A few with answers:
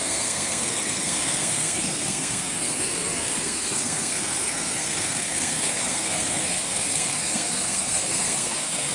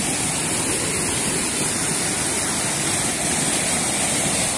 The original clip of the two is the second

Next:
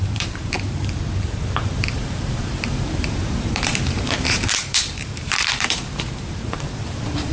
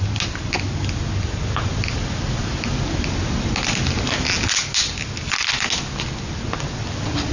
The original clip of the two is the second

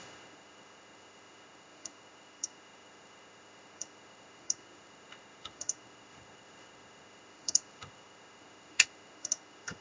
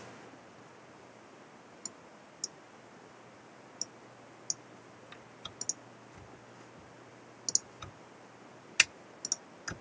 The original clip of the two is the second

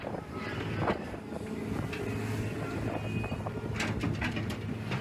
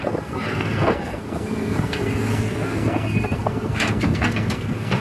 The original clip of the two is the first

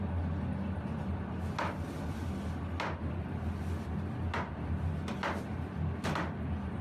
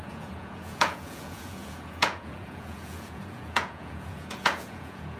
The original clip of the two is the first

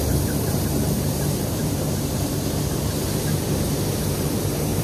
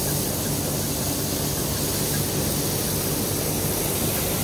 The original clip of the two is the second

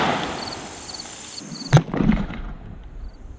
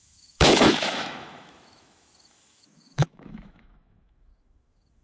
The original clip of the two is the first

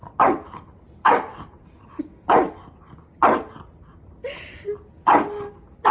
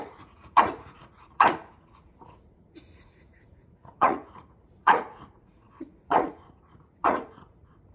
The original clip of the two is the first